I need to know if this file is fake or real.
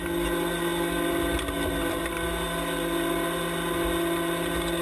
real